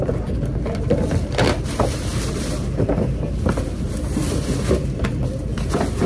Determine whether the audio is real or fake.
fake